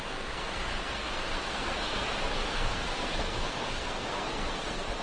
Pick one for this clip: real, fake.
fake